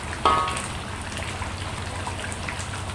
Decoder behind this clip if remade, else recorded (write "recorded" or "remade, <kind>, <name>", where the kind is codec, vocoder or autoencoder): recorded